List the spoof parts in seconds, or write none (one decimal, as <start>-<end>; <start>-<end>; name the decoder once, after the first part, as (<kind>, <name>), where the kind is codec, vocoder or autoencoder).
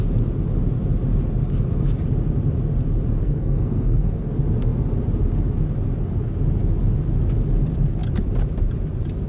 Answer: 3.2-4.3 (codec, SNAC)